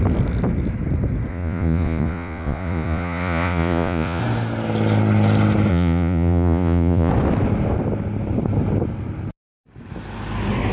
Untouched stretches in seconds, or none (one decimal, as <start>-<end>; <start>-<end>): 0.0-1.3; 4.2-5.7; 7.1-10.7